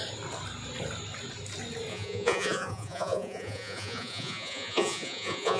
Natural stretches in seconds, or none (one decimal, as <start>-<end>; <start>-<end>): 0.0-1.9